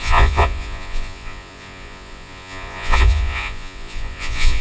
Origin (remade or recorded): remade